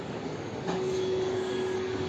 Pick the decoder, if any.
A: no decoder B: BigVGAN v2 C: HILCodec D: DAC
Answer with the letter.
D